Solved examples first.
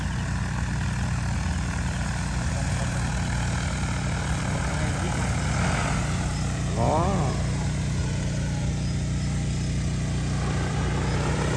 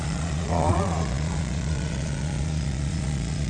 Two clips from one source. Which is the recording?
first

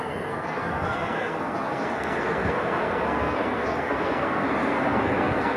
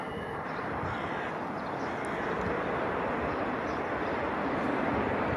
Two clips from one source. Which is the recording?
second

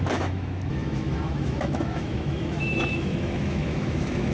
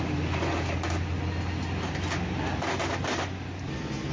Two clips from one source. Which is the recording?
second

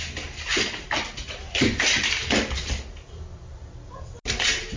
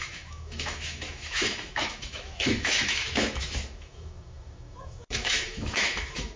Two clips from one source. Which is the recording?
first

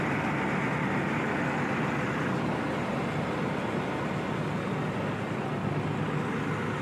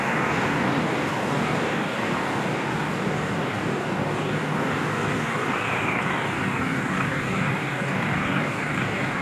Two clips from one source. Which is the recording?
first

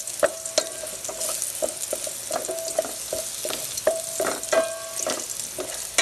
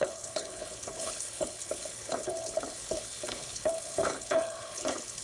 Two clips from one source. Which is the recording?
first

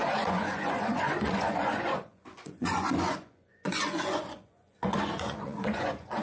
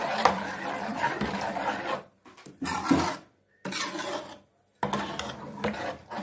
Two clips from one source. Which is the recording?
second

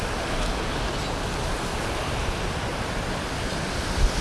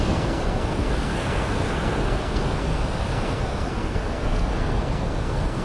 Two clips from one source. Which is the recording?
first